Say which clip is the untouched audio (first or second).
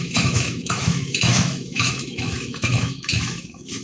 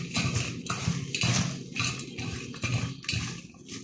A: second